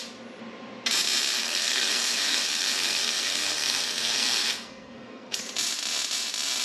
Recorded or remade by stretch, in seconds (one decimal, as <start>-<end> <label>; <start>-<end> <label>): 0.0-1.4 recorded; 1.4-5.4 remade; 5.4-6.6 recorded